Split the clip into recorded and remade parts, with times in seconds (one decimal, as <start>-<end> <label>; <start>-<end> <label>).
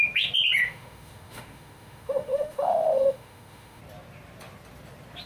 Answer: 0.0-0.6 recorded; 0.6-3.8 remade; 3.8-5.3 recorded